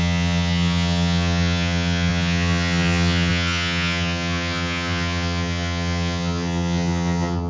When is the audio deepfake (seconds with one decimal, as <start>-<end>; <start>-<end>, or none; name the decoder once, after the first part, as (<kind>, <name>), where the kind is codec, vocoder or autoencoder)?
0.0-7.5 (vocoder, HiFi-GAN)